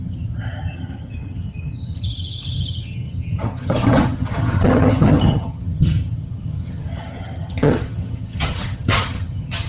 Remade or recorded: remade